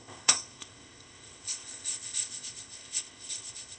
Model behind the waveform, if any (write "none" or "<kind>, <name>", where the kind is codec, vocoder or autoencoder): codec, ZipCodec